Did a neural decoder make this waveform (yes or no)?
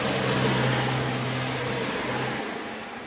no